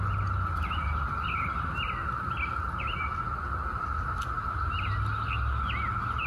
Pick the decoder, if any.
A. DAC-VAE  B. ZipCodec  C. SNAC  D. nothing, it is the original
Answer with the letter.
D